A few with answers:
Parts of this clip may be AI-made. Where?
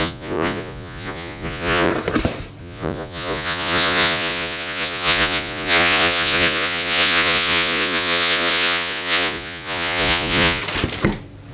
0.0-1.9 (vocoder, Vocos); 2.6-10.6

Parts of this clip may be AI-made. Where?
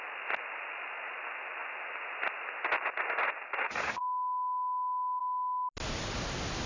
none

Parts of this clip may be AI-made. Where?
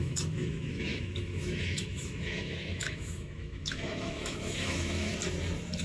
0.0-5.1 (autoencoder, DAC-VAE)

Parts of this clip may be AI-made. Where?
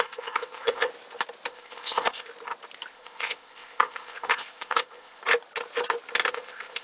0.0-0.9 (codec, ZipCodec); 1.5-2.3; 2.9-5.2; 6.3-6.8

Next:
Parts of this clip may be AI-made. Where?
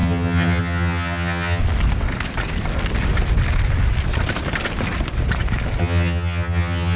0.0-1.6 (vocoder, HiFi-GAN); 5.8-7.0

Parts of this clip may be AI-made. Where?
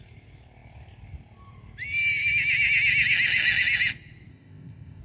4.3-5.0 (codec, ZipCodec)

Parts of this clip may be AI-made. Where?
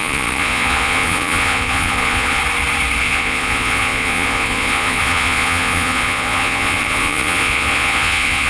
0.0-2.4 (vocoder, Vocos); 3.0-8.5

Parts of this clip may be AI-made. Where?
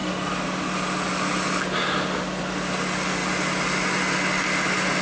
none